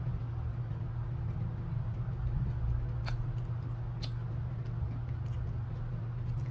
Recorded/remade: recorded